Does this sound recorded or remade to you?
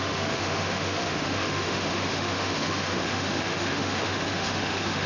remade